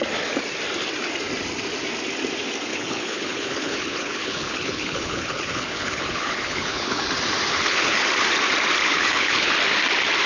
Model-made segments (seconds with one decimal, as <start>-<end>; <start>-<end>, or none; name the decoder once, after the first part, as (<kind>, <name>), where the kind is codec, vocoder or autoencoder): 2.7-7.0 (codec, HILCodec); 7.5-8.0; 8.8-9.5